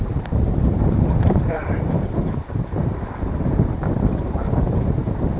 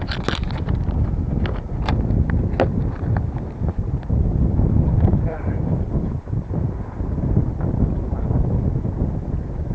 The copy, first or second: first